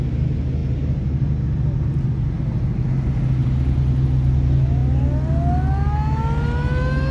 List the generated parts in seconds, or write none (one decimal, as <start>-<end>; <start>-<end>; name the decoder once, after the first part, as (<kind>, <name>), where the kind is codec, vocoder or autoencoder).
none